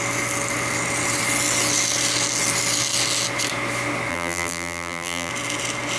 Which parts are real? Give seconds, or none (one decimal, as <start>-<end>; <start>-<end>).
0.0-4.1; 5.3-6.0